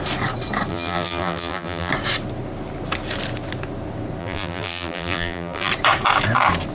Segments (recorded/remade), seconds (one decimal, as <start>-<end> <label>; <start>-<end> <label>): 0.0-0.7 recorded; 0.7-1.9 remade; 1.9-4.2 recorded; 4.2-5.7 remade; 5.7-6.7 recorded